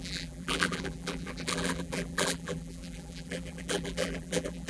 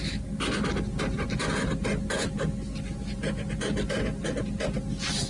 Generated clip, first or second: first